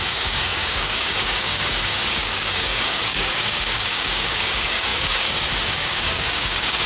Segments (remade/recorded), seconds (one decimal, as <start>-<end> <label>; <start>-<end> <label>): 0.0-6.9 remade